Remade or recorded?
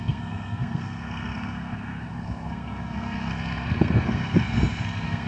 remade